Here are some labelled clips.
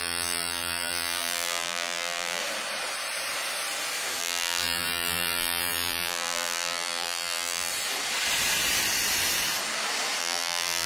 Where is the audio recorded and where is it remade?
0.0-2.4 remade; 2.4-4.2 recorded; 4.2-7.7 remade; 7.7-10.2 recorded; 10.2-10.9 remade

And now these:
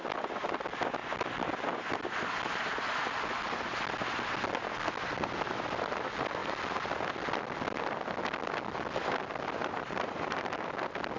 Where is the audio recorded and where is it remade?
0.0-9.6 recorded; 9.6-10.7 remade; 10.7-11.2 recorded

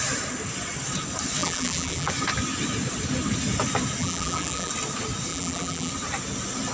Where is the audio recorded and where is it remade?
0.0-1.4 recorded; 1.4-2.1 remade; 2.1-4.0 recorded; 4.0-4.7 remade; 4.7-5.3 recorded; 5.3-5.9 remade; 5.9-6.7 recorded

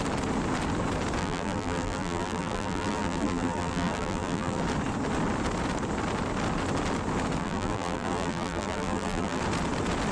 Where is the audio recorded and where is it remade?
0.0-1.2 recorded; 1.2-4.6 remade; 4.6-7.4 recorded; 7.4-9.4 remade; 9.4-10.1 recorded

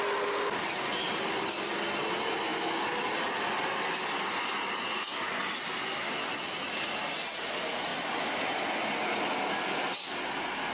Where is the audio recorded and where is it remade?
0.0-0.9 recorded; 0.9-2.0 remade; 2.0-7.9 recorded; 7.9-8.6 remade; 8.6-10.7 recorded